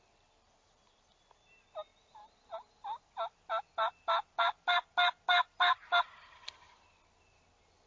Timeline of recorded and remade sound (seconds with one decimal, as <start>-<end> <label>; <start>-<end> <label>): 0.0-7.9 recorded